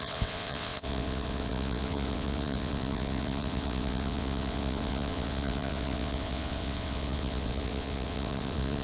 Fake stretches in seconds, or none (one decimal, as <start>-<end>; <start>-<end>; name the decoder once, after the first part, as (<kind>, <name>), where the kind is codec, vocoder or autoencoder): 0.0-8.8 (vocoder, WaveNeXt)